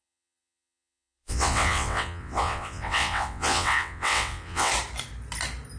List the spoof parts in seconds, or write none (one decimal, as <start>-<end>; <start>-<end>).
0.0-4.7